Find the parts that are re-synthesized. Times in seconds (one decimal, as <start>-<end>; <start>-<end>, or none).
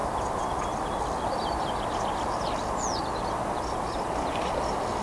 none